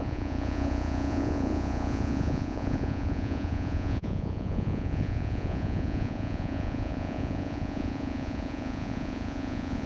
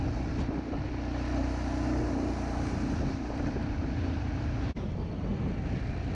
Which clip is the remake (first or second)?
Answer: first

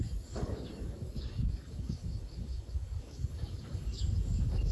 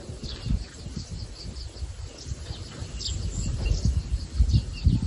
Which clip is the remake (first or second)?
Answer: first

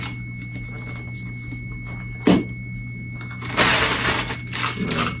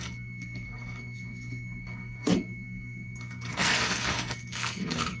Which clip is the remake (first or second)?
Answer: second